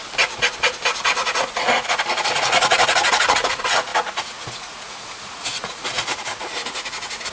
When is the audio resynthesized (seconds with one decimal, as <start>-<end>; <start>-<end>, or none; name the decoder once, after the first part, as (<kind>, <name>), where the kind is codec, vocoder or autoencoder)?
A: 1.2-7.3 (vocoder, Vocos)